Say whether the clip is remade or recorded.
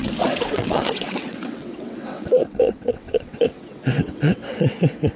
remade